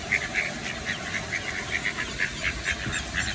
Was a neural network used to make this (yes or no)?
no